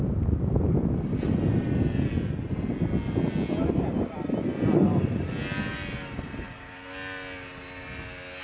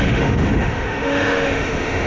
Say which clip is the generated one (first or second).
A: second